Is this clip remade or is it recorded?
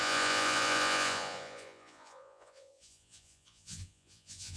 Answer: remade